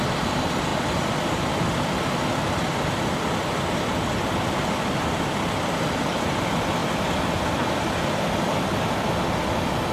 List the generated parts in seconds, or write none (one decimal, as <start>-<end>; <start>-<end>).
none